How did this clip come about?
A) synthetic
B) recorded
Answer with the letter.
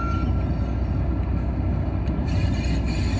B